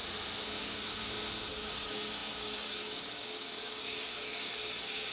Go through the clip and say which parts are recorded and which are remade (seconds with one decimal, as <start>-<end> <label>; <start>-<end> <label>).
0.0-0.6 recorded; 0.6-1.0 remade; 1.0-1.5 recorded; 1.5-5.1 remade